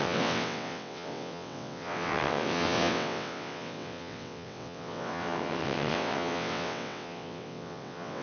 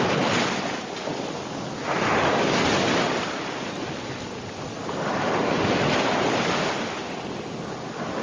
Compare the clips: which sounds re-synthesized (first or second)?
first